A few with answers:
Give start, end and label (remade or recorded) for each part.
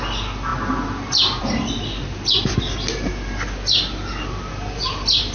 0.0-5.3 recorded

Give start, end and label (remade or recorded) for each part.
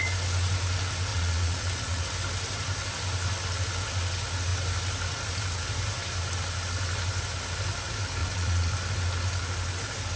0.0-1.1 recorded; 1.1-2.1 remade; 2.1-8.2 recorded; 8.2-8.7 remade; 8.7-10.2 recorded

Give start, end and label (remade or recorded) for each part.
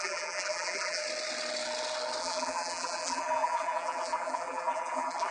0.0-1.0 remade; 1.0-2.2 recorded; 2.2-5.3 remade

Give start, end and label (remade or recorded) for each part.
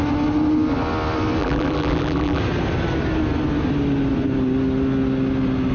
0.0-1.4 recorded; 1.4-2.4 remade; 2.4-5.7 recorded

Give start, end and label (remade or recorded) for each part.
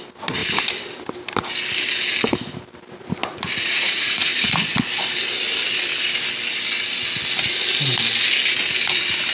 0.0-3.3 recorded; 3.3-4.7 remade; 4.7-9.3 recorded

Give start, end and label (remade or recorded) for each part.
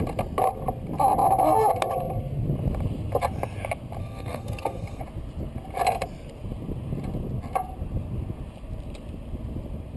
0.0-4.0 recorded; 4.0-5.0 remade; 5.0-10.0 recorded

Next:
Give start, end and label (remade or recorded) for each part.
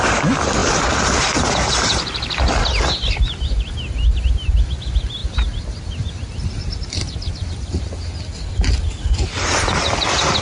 0.0-10.4 recorded